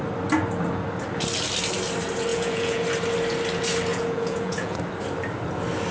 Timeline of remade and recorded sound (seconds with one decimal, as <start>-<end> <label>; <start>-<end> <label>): 0.0-2.3 recorded; 2.3-2.8 remade; 2.8-3.9 recorded; 3.9-4.8 remade; 4.8-5.9 recorded